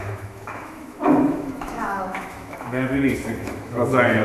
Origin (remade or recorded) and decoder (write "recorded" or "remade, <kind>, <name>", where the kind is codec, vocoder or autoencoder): remade, autoencoder, DAC-VAE